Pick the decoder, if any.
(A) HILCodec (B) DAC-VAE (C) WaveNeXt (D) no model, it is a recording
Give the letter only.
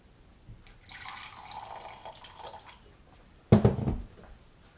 D